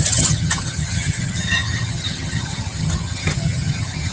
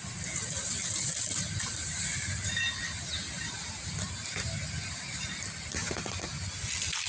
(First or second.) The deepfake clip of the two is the first